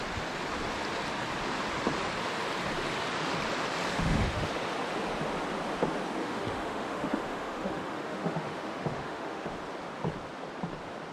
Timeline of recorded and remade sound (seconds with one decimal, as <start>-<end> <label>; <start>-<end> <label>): 0.0-3.9 recorded; 3.9-4.5 remade; 4.5-6.2 recorded; 6.2-9.5 remade; 9.5-11.1 recorded